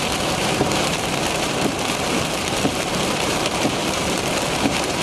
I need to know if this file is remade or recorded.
remade